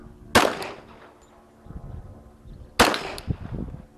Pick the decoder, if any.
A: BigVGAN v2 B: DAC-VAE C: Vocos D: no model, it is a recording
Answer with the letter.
D